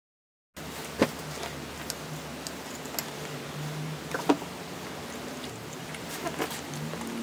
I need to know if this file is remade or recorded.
recorded